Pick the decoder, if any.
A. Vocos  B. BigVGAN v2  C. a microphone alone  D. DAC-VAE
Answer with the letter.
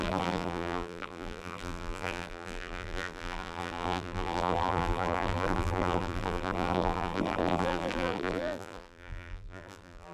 B